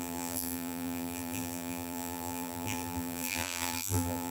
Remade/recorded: remade